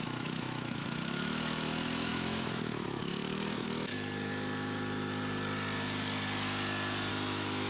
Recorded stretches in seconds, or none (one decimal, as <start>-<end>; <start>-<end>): 3.9-7.1